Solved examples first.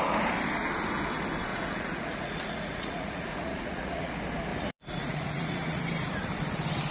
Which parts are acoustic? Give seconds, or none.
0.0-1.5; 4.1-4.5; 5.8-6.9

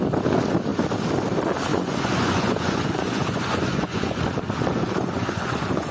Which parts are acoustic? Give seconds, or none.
0.0-1.7; 4.2-4.7